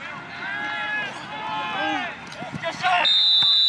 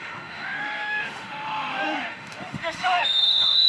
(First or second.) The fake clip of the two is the second